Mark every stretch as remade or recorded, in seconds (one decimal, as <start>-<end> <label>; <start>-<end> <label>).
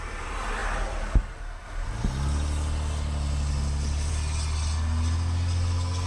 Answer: 0.0-6.1 recorded